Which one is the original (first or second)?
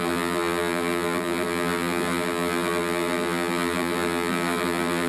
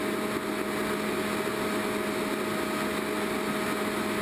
second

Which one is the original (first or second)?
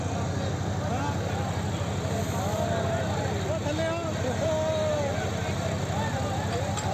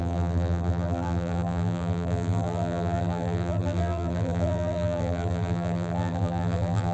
first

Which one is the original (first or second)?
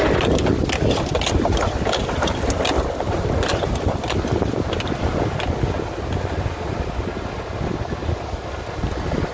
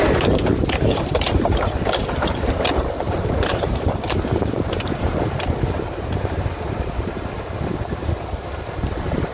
first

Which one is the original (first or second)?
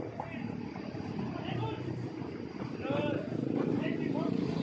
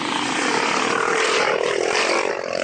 first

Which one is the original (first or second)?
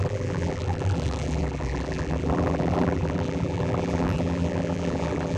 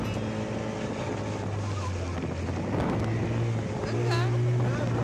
second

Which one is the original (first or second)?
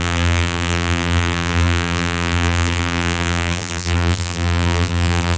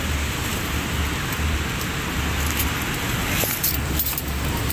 second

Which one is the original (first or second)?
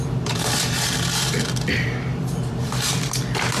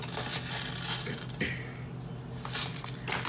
second